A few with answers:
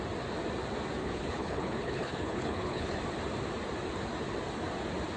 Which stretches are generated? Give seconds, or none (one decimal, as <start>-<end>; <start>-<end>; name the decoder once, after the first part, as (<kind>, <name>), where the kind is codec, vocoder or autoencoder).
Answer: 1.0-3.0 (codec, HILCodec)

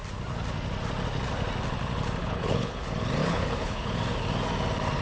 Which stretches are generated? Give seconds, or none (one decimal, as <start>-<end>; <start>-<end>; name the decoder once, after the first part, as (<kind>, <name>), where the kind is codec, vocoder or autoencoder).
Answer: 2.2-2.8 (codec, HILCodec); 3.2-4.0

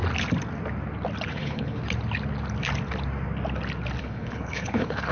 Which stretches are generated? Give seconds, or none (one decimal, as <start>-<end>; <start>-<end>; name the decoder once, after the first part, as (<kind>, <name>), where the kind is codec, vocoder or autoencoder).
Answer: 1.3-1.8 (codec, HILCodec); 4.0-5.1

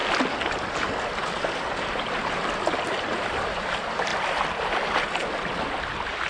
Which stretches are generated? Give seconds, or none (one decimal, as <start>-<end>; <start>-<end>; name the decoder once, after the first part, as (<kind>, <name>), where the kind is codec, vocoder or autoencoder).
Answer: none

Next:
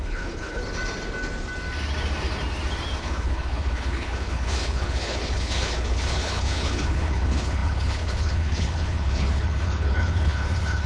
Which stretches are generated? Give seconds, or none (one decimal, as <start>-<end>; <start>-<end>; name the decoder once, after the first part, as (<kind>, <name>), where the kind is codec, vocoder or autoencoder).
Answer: 0.0-0.6 (codec, HILCodec); 3.0-10.9